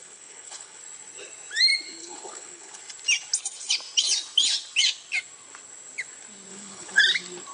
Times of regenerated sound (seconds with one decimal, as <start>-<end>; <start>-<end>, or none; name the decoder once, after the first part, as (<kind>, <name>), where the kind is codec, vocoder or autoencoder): 0.0-0.8 (codec, HILCodec); 2.0-2.8; 6.5-7.0